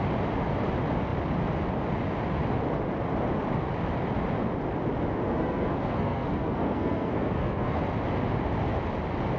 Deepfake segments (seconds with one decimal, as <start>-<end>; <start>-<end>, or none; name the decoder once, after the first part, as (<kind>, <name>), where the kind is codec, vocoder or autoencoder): 5.3-7.8 (codec, SNAC)

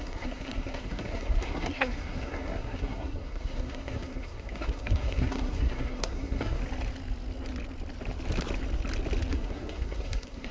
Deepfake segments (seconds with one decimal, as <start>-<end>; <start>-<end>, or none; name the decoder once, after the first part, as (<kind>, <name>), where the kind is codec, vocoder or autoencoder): 0.0-6.6 (codec, SNAC); 9.3-10.5